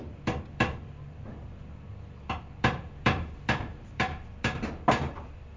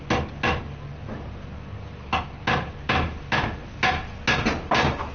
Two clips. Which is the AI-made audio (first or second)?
first